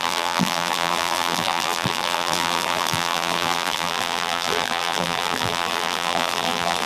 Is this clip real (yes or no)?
no